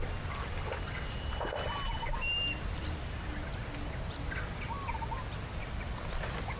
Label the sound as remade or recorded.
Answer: recorded